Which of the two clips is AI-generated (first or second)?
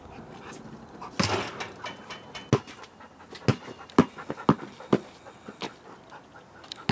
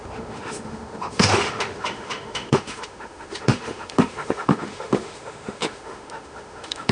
second